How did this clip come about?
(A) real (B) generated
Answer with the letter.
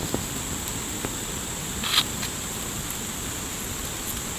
A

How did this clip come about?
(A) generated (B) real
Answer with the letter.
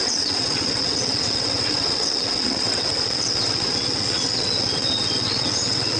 A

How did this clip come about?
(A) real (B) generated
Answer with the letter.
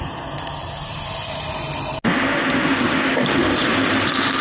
A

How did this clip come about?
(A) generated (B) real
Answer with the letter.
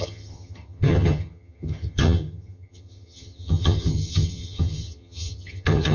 A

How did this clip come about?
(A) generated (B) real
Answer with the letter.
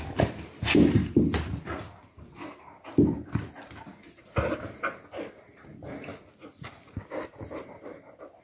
B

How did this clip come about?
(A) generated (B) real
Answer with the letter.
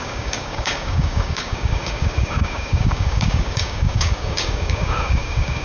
A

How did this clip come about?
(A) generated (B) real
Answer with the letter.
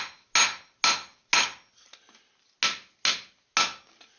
B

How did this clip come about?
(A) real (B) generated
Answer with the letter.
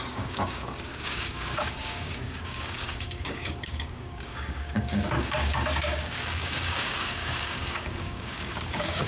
B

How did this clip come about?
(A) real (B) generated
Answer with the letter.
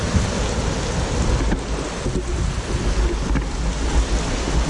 A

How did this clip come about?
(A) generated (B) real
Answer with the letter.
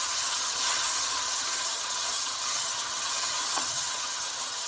A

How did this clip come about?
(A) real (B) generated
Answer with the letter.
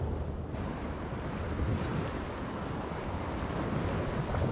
A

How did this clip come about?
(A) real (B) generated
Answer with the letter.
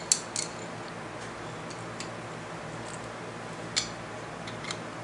A